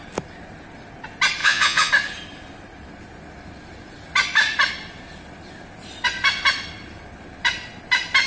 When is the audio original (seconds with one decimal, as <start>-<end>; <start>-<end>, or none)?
0.0-1.4; 1.9-8.3